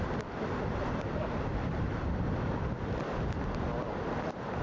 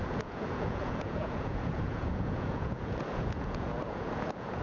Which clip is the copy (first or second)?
second